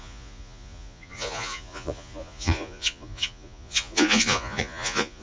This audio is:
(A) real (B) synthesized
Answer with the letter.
B